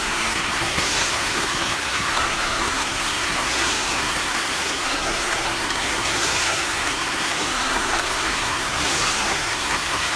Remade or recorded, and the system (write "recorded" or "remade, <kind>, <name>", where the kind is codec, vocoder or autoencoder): remade, codec, SNAC